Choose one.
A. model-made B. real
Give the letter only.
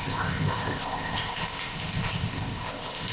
A